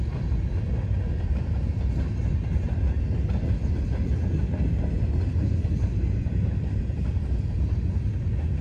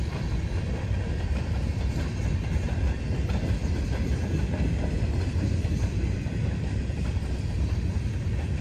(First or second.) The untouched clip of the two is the first